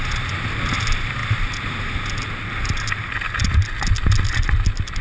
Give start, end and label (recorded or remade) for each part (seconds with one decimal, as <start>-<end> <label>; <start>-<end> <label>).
0.0-5.0 recorded